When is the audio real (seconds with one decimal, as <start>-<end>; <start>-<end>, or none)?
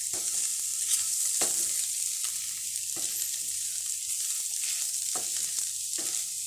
0.0-6.5